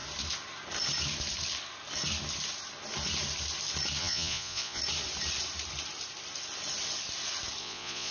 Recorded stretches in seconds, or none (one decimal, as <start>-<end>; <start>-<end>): 0.0-4.0; 4.8-7.6